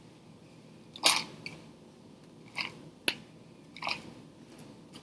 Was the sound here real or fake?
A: real